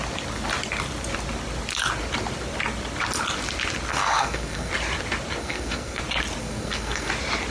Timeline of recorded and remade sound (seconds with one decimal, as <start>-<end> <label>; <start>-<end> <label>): 0.0-3.9 recorded; 3.9-4.7 remade; 4.7-5.4 recorded; 5.4-6.0 remade; 6.0-6.4 recorded; 6.4-7.1 remade; 7.1-7.5 recorded